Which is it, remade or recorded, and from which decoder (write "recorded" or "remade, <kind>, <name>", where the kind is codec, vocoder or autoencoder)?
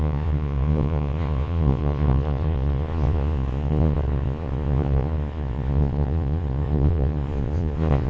remade, vocoder, Vocos